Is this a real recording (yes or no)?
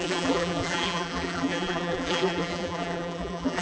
no